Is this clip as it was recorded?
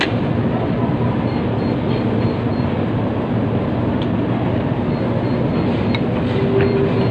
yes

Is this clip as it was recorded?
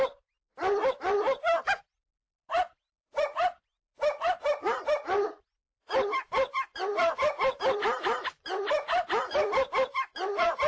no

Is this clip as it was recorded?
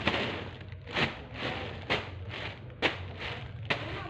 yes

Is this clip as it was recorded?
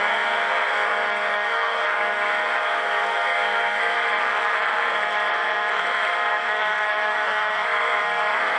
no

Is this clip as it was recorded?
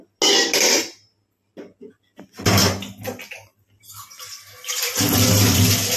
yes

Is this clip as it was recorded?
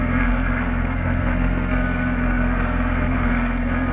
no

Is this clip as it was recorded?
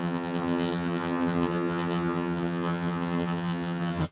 no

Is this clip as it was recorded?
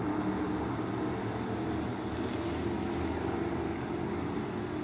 yes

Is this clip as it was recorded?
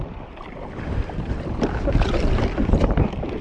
yes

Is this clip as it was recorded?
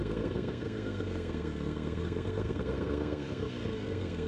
no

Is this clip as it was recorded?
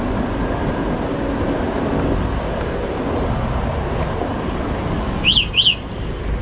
yes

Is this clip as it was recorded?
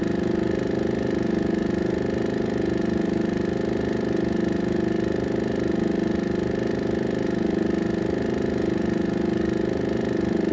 yes